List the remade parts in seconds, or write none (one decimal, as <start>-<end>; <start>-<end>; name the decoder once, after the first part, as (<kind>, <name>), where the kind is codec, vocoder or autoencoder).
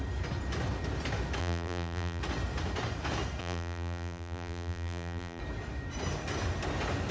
1.4-2.2 (vocoder, BigVGAN v2); 3.4-5.4